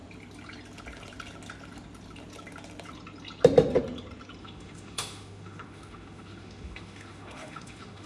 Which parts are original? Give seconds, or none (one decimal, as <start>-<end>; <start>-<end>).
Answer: 0.0-4.4